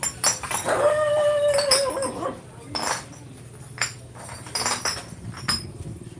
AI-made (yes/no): no